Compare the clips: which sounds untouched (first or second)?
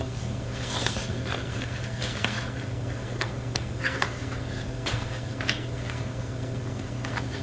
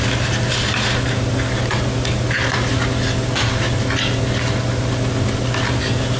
second